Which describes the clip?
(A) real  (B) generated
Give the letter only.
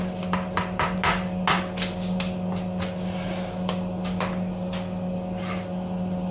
A